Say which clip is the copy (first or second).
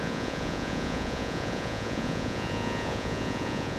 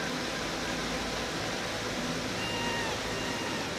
first